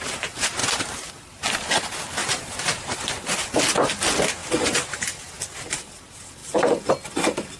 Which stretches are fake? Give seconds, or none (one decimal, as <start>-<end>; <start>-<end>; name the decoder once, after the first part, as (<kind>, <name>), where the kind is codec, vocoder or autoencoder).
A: 0.6-1.1 (vocoder, BigVGAN v2); 2.2-3.1; 4.4-5.3; 6.4-6.9